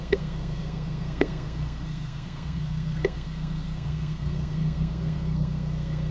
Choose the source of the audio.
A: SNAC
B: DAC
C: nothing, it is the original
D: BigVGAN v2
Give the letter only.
A